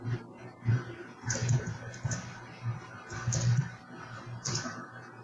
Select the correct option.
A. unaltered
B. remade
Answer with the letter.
B